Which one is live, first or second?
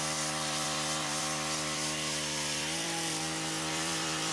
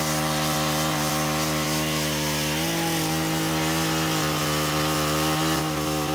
second